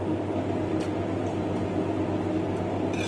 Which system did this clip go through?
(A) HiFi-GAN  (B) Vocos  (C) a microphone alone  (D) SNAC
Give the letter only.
C